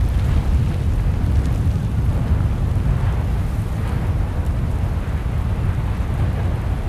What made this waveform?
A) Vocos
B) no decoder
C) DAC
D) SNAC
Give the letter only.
B